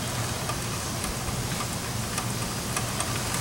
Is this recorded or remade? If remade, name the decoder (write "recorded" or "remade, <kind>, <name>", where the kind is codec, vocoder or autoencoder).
recorded